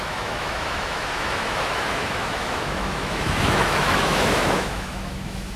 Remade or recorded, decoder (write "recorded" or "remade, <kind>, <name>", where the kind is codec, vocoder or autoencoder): remade, autoencoder, DAC-VAE